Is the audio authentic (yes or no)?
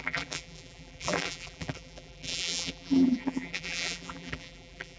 no